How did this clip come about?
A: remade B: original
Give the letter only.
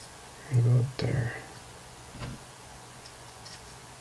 A